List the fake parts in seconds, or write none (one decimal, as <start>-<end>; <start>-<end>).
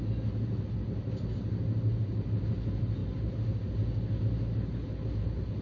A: none